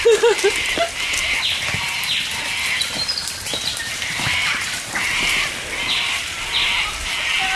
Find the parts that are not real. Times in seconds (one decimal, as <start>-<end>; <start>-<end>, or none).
none